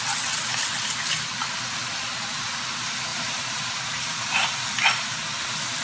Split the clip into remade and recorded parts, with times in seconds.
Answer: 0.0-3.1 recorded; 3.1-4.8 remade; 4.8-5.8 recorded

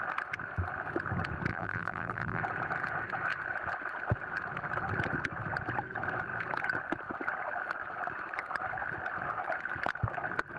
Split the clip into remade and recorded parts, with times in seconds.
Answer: 0.0-1.5 recorded; 1.5-2.4 remade; 2.4-10.6 recorded